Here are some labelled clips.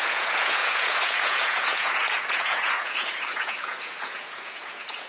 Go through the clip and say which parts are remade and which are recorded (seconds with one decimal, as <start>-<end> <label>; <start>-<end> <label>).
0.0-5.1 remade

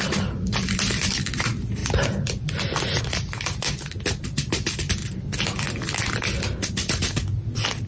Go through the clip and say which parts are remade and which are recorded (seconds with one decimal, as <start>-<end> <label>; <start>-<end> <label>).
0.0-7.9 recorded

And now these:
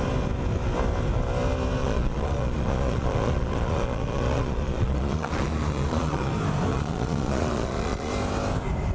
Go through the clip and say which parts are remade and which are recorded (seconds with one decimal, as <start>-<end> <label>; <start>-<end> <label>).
0.0-1.8 recorded; 1.8-6.3 remade; 6.3-6.7 recorded; 6.7-8.1 remade; 8.1-8.9 recorded

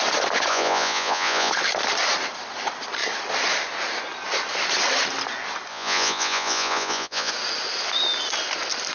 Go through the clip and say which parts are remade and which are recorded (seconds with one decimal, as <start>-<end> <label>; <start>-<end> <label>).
0.0-0.5 recorded; 0.5-1.5 remade; 1.5-5.7 recorded; 5.7-7.3 remade; 7.3-8.9 recorded

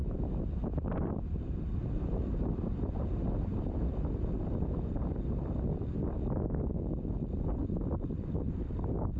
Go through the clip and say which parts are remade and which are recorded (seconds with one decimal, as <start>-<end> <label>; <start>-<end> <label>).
0.0-9.2 recorded